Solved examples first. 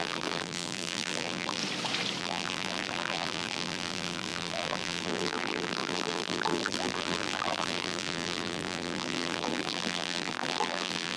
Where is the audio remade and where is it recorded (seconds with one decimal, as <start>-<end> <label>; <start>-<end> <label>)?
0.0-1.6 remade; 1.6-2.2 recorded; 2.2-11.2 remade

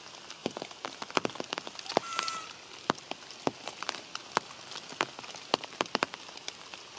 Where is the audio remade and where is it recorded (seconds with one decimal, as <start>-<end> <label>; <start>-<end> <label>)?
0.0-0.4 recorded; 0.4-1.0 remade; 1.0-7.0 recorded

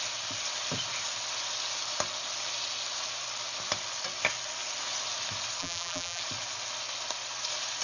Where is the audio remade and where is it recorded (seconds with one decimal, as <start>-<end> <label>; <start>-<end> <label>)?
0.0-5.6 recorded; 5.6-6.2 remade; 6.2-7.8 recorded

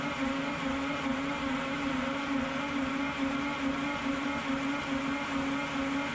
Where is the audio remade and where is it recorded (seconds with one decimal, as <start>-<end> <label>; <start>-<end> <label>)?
0.0-1.1 recorded; 1.1-4.8 remade; 4.8-6.1 recorded